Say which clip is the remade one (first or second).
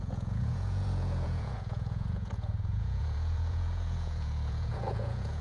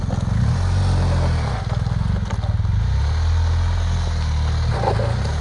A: first